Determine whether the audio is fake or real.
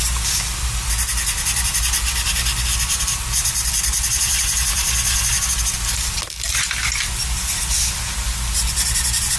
real